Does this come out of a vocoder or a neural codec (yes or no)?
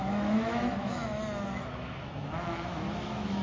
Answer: yes